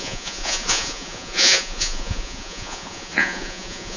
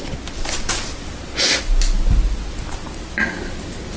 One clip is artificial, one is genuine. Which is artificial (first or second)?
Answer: first